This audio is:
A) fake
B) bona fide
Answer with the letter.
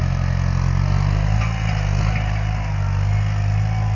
B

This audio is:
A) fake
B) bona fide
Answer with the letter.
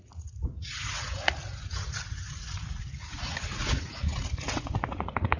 A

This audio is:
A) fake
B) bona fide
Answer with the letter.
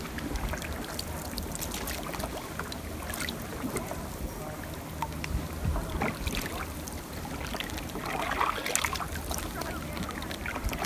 B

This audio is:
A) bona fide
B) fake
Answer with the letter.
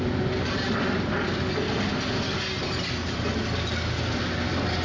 A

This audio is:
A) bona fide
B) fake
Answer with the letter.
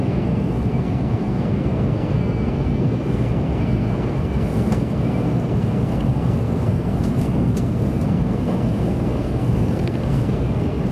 B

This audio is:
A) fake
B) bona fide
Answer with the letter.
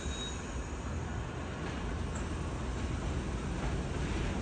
B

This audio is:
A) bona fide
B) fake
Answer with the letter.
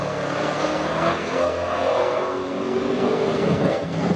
B